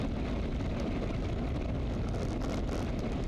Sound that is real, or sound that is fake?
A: real